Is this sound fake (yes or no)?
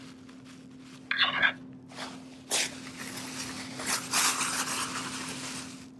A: no